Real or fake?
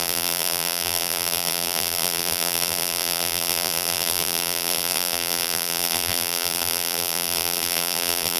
fake